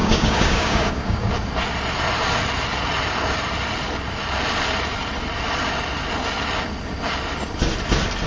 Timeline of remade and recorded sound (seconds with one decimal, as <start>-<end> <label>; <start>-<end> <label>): 0.0-1.3 remade; 1.3-8.3 recorded